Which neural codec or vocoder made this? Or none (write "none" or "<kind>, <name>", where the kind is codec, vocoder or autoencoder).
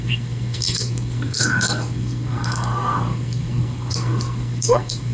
codec, SNAC